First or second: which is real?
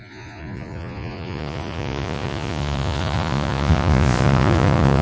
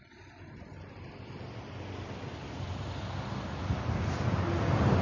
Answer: second